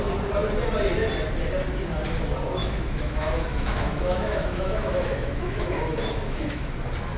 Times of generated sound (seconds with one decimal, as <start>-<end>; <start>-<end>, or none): 2.6-6.8